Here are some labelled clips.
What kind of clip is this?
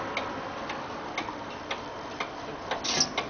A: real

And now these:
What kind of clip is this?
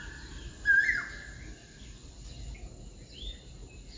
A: real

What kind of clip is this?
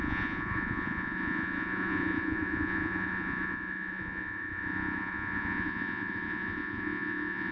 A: fake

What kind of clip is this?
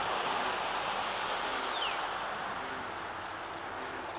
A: real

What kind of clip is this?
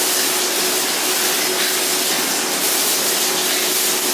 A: real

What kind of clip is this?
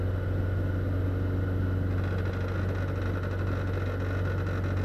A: real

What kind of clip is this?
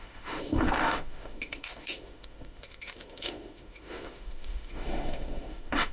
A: fake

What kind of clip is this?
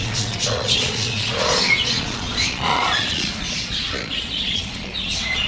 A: fake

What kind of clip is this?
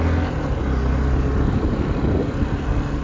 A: real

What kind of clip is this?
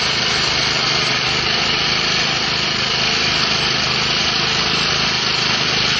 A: real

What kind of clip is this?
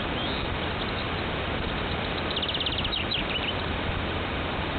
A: real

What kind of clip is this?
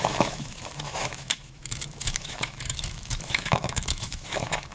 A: fake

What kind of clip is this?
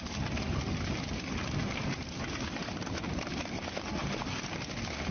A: real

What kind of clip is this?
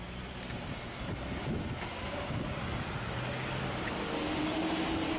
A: real